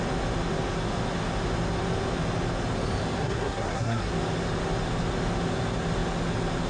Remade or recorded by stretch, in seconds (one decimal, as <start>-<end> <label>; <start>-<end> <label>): 0.0-3.2 recorded; 3.2-4.1 remade; 4.1-6.7 recorded